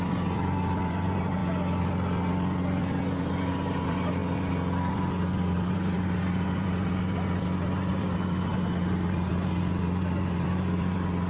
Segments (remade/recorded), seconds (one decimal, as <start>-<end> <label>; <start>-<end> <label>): 0.0-1.4 remade; 1.4-3.2 recorded; 3.2-4.2 remade; 4.2-4.9 recorded; 4.9-6.9 remade; 6.9-7.9 recorded; 7.9-11.3 remade